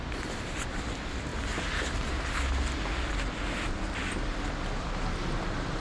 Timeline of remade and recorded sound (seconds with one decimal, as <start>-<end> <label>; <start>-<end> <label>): 0.0-5.8 recorded